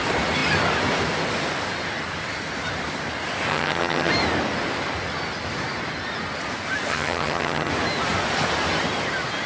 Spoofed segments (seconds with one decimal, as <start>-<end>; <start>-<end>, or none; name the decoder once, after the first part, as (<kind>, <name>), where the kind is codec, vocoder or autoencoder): 3.5-4.1 (vocoder, HiFi-GAN); 6.9-7.7